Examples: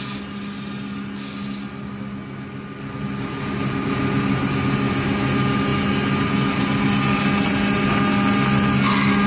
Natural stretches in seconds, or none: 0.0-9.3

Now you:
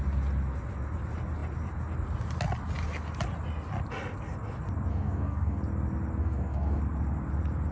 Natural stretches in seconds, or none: 0.0-4.9; 5.6-6.2; 6.8-7.7

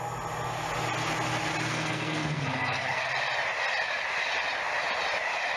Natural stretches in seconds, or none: 0.0-1.7; 3.1-5.6